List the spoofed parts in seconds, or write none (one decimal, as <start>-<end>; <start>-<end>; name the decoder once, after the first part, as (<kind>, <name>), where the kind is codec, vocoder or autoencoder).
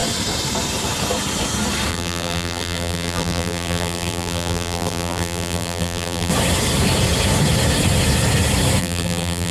1.9-6.3 (vocoder, BigVGAN v2); 8.8-9.5